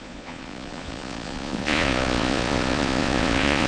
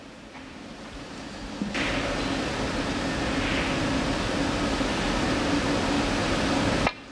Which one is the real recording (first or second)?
second